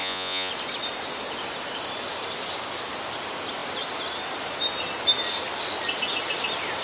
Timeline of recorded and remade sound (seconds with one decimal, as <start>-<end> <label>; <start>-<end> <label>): 0.0-0.5 remade; 0.5-6.8 recorded